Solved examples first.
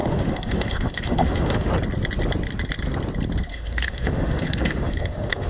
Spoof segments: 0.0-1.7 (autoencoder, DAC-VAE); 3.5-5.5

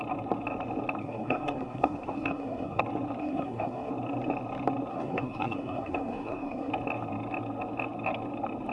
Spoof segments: 1.0-2.8 (codec, SNAC); 3.2-3.9; 4.9-6.7

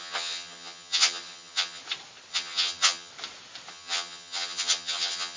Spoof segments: 0.0-1.8 (vocoder, HiFi-GAN); 2.3-3.1; 3.7-5.4

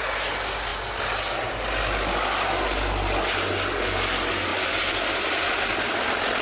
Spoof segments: 4.5-5.7 (vocoder, BigVGAN v2)

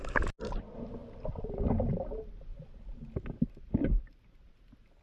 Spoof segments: 1.0-1.5 (vocoder, BigVGAN v2); 2.5-3.5

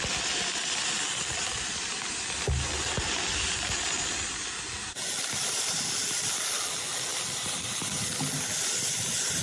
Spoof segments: none